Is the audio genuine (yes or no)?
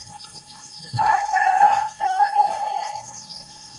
no